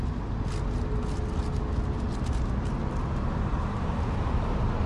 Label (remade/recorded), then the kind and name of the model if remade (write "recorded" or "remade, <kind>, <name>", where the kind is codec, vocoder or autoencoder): recorded